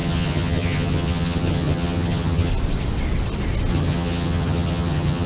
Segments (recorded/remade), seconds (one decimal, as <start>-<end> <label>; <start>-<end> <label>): 0.0-2.5 remade; 2.5-3.7 recorded; 3.7-5.3 remade